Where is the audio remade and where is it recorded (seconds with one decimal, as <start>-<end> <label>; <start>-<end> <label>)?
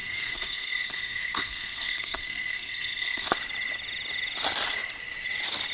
0.0-3.3 remade; 3.3-5.7 recorded